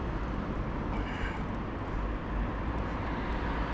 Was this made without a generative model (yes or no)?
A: yes